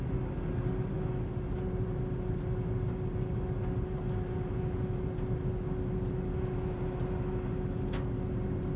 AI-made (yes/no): no